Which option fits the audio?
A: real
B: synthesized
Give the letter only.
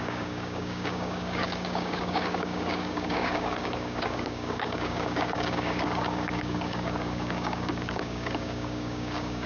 B